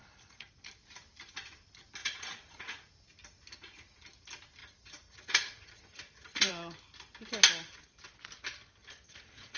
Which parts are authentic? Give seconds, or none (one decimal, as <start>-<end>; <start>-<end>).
0.5-2.0; 2.9-4.6; 6.5-8.8